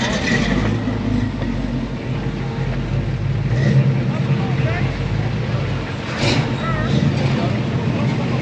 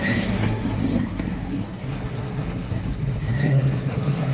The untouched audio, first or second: first